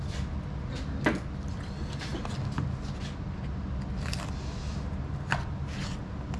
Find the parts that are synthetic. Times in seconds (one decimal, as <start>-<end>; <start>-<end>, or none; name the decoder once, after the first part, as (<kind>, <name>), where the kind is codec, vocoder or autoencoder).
none